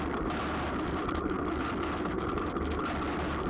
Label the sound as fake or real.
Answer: fake